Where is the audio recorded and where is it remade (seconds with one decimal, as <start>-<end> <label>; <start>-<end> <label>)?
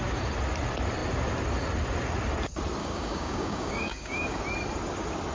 0.0-2.8 recorded; 2.8-4.4 remade; 4.4-5.3 recorded